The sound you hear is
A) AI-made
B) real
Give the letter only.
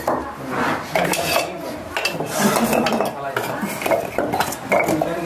B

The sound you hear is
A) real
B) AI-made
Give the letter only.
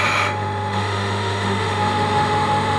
B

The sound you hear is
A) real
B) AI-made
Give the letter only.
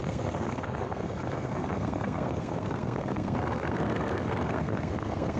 B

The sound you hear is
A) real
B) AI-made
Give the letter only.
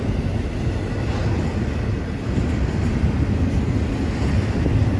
A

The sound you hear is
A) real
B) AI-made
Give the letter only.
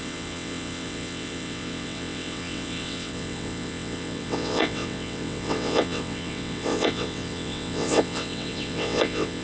B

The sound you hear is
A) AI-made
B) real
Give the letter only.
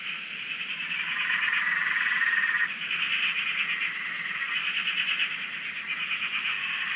B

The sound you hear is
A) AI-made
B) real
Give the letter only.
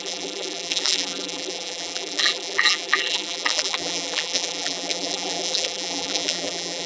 A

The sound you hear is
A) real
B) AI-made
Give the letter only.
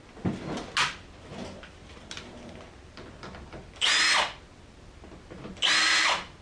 A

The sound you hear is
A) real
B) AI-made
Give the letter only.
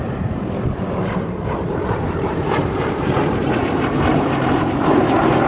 B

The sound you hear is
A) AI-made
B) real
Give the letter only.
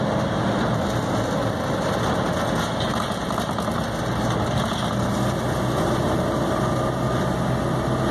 B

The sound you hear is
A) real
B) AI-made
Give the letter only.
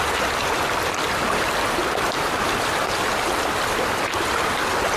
A